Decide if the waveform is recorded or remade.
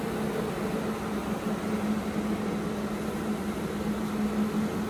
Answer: recorded